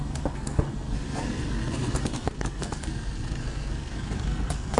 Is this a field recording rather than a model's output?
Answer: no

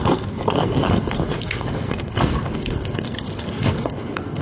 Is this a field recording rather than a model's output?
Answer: no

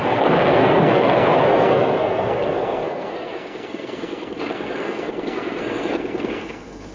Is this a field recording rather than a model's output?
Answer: no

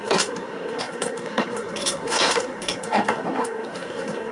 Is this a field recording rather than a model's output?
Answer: no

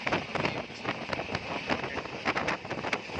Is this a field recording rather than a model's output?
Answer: yes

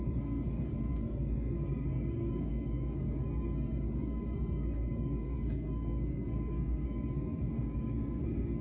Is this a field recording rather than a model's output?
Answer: no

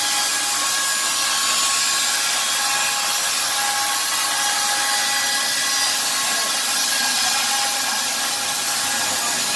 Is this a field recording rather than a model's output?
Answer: yes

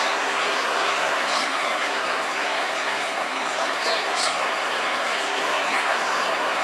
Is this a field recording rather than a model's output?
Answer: no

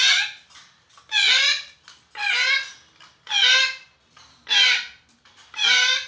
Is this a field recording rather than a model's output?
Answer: yes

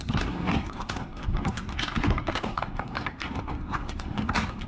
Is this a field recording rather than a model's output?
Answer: no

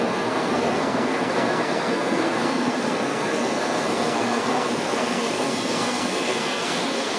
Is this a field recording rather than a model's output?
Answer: no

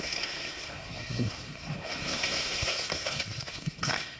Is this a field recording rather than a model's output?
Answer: no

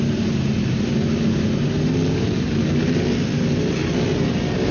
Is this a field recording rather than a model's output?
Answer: yes